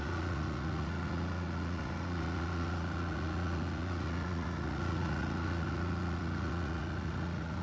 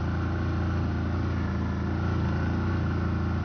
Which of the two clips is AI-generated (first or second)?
first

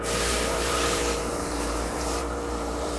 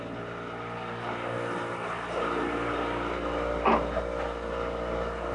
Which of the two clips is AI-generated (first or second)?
first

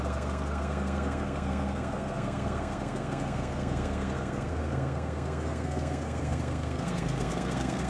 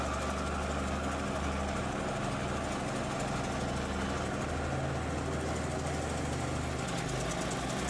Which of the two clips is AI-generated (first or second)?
first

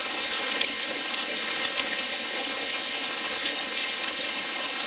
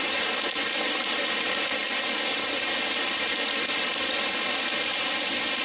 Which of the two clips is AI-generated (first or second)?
first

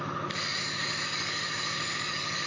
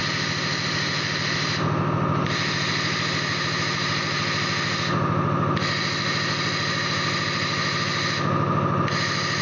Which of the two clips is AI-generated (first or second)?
first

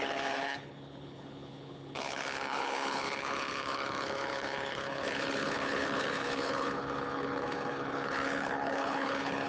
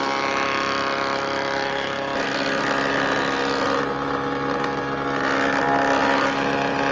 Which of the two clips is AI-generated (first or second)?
first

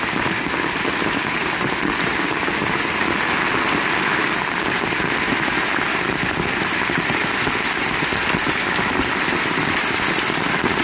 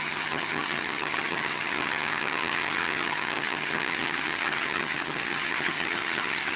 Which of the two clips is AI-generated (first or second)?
second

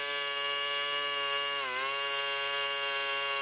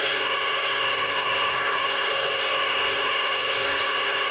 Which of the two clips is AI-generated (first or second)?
second